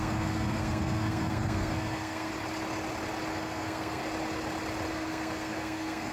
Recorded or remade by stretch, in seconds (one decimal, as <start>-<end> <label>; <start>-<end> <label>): 0.0-2.3 remade; 2.3-3.3 recorded; 3.3-4.0 remade; 4.0-4.9 recorded; 4.9-6.1 remade